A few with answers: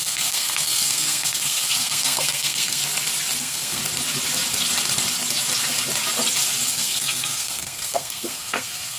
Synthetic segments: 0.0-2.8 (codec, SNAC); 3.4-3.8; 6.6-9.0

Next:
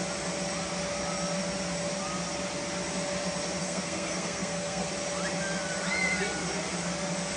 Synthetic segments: 3.6-4.9 (codec, SNAC)